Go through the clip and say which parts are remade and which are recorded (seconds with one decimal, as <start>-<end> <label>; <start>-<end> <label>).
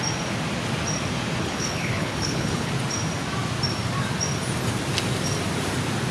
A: 0.0-1.4 recorded; 1.4-2.7 remade; 2.7-6.1 recorded